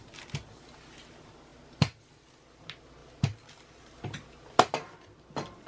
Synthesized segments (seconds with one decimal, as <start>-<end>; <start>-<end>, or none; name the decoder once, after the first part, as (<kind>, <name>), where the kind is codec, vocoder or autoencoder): none